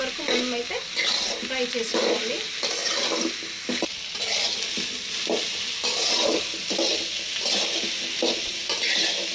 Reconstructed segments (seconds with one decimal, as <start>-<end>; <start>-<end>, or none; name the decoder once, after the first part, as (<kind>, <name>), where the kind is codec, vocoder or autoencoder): none